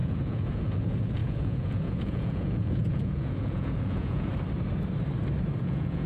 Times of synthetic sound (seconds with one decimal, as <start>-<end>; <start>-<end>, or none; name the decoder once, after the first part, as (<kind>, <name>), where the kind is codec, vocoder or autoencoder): 0.0-4.3 (vocoder, Vocos); 5.6-6.1

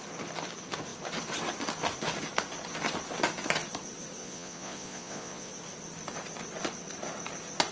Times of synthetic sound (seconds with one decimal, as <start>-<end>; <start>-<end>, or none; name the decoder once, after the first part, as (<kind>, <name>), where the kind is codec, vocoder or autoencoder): 4.2-5.5 (vocoder, Vocos)

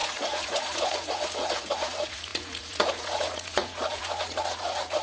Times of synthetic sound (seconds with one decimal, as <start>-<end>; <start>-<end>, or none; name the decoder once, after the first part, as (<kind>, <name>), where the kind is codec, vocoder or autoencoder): 0.0-5.0 (vocoder, Vocos)

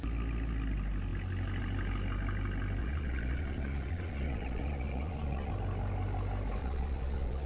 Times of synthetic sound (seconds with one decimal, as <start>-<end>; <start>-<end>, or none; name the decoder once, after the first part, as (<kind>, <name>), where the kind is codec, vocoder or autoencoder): 2.8-5.5 (vocoder, Vocos); 6.6-7.5